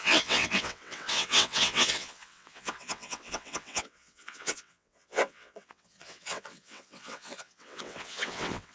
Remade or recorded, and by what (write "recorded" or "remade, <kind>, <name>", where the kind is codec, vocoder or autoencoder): remade, vocoder, WaveNeXt